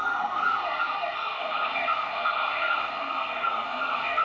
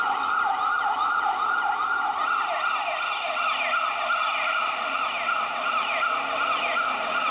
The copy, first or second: first